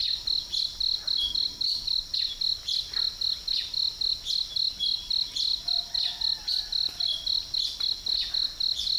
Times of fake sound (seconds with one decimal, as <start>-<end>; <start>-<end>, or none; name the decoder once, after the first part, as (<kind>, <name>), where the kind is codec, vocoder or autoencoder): none